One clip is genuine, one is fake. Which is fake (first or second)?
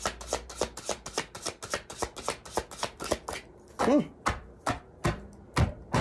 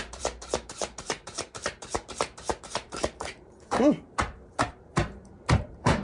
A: second